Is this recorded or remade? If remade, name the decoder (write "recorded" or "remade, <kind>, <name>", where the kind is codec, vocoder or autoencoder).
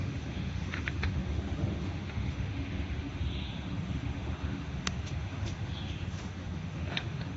remade, autoencoder, DAC-VAE